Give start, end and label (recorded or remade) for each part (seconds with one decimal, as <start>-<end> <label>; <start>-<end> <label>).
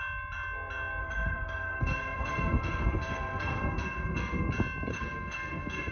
0.0-1.0 recorded; 1.0-4.5 remade; 4.5-4.9 recorded; 4.9-5.9 remade